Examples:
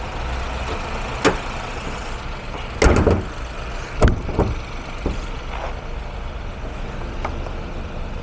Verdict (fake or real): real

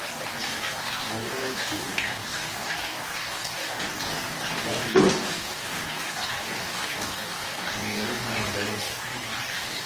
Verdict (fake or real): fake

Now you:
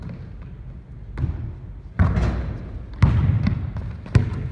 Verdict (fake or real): real